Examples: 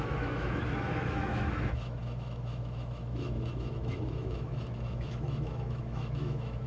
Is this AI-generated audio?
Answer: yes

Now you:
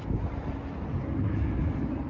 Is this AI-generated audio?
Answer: no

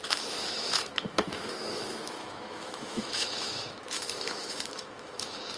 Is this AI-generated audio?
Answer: yes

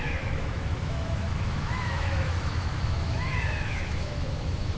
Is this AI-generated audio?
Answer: yes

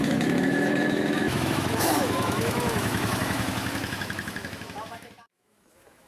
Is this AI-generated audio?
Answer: yes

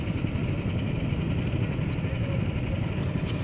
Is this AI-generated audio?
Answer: no